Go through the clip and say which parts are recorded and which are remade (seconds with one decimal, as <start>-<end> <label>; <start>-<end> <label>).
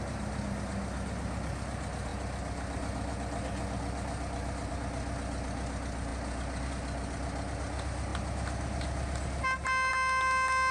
0.0-10.7 recorded